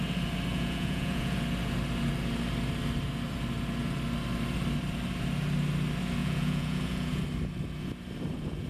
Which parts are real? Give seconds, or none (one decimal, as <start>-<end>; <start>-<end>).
0.0-0.5; 1.4-6.2; 7.2-8.7